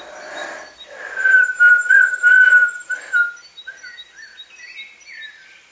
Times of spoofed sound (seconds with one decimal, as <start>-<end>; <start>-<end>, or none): none